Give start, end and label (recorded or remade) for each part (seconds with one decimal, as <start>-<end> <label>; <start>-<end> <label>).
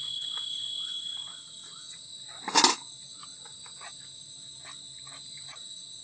0.0-2.1 remade; 2.1-6.0 recorded